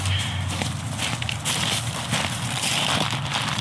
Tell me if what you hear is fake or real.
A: real